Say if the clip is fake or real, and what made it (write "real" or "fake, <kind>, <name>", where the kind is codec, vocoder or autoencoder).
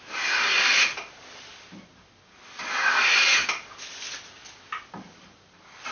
real